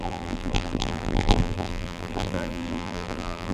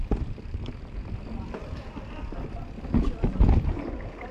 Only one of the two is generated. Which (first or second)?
first